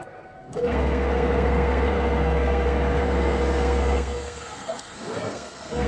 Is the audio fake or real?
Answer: fake